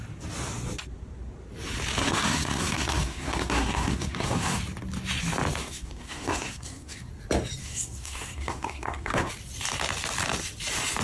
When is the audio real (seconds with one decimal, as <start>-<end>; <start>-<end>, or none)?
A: 0.0-2.0; 4.6-5.6; 7.1-7.6; 9.3-11.0